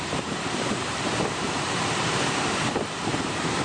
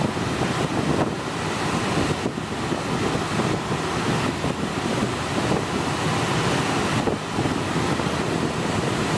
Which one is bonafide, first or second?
second